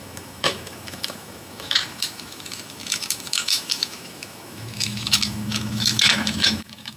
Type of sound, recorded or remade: remade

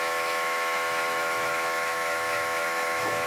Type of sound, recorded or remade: remade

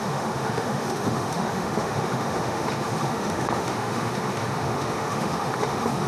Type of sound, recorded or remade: remade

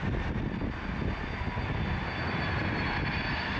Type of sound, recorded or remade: recorded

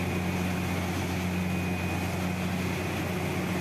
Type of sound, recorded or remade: recorded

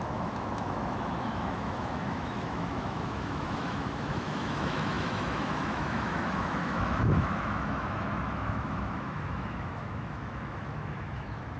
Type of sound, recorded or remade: remade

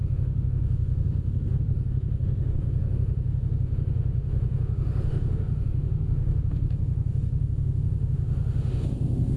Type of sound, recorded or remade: remade